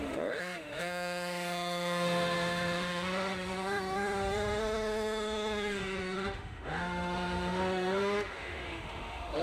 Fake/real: fake